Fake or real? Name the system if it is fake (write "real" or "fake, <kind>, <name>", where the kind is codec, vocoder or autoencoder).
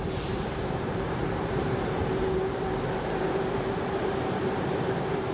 fake, vocoder, BigVGAN v2